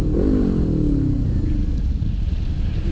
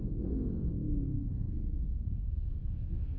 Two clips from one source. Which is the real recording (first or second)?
first